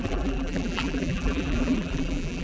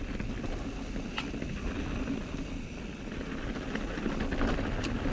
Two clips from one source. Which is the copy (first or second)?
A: first